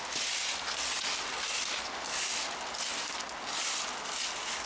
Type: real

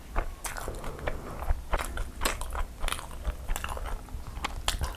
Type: real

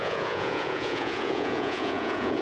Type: fake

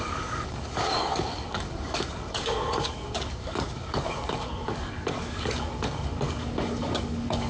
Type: fake